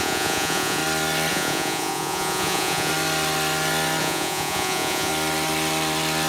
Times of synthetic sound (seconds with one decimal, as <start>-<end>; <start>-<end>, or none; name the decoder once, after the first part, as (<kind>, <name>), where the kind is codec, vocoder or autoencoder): 0.0-0.8 (vocoder, Vocos); 1.3-2.9; 4.0-5.1